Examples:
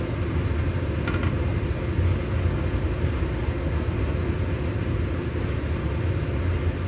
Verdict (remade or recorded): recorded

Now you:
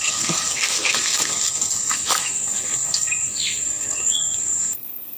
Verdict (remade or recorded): remade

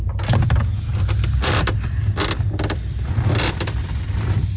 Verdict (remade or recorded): recorded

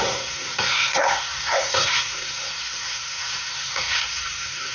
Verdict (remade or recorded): remade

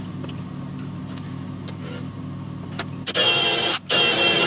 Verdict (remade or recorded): recorded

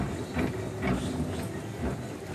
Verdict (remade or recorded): recorded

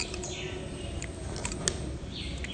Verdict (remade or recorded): recorded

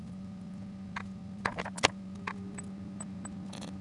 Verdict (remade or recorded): recorded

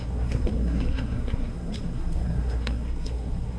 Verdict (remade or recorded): remade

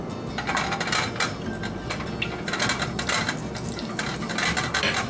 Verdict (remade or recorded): recorded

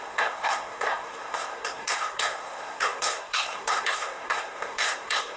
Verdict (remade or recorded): remade